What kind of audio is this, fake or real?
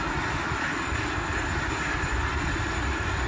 real